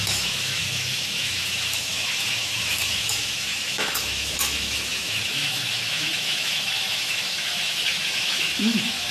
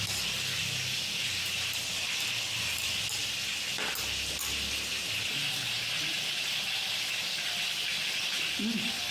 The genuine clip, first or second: second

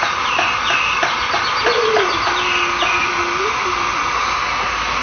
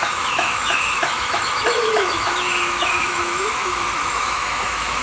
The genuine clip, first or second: first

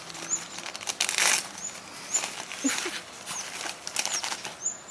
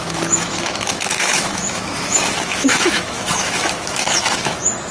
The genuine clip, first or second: first